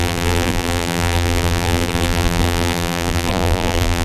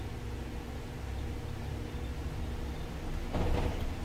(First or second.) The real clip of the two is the second